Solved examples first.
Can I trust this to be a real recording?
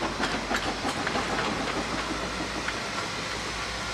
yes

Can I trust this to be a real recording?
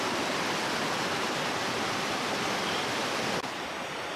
no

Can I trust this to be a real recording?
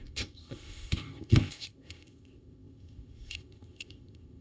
no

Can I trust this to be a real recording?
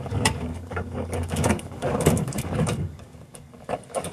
no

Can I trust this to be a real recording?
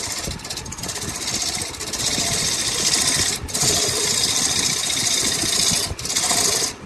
yes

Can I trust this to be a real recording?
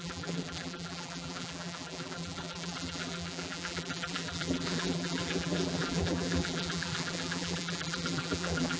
no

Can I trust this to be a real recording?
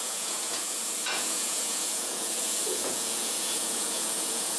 no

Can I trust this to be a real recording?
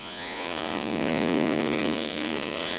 no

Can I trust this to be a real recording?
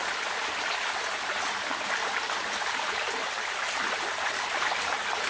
yes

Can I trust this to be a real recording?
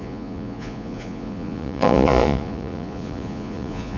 no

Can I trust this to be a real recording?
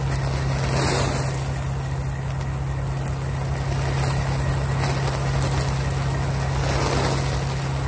yes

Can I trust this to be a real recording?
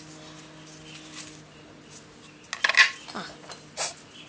yes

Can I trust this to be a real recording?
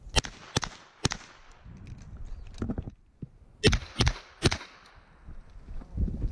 yes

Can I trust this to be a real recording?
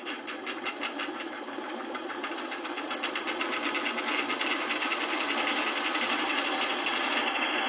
yes